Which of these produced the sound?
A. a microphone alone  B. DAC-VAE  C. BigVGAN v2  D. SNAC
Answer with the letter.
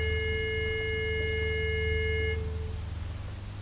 A